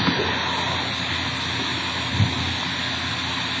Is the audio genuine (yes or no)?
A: yes